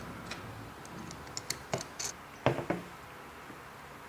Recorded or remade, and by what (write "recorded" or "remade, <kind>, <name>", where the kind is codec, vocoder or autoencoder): recorded